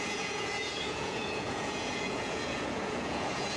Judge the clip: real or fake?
fake